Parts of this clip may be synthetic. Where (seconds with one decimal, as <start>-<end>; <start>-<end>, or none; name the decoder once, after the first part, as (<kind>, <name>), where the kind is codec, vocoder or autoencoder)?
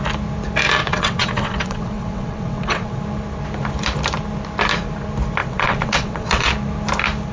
0.8-3.0 (vocoder, WaveNeXt); 5.4-6.5